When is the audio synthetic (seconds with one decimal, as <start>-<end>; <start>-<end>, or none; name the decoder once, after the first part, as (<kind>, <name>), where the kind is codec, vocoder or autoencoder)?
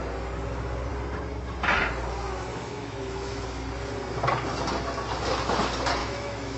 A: 2.5-3.4 (autoencoder, DAC-VAE); 6.0-6.6